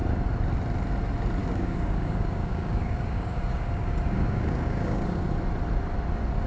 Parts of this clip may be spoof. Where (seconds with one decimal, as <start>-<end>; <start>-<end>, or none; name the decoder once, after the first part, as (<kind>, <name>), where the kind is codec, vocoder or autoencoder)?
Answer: 1.4-5.3 (codec, DAC)